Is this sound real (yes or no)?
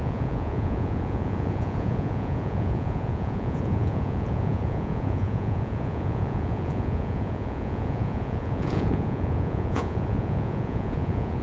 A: no